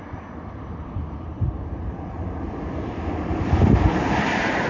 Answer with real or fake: real